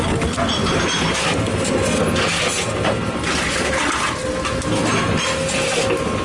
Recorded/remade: recorded